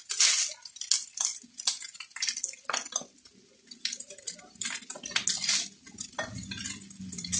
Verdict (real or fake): real